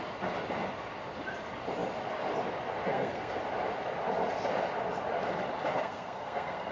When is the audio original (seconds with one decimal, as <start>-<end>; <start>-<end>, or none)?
0.0-2.9; 3.4-5.8